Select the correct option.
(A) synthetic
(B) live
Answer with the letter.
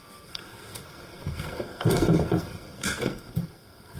A